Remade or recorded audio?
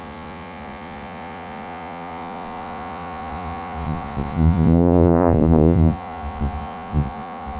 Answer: remade